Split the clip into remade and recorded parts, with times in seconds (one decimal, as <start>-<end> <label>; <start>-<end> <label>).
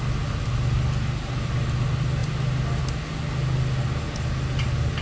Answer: 0.0-5.0 recorded